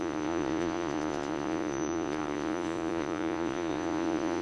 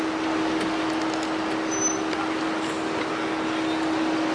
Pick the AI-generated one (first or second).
first